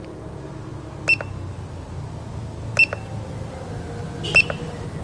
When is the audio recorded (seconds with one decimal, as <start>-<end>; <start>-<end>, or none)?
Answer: 0.0-5.0